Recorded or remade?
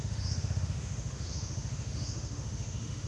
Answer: remade